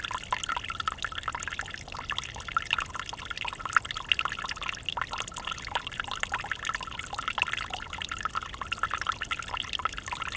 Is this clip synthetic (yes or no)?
no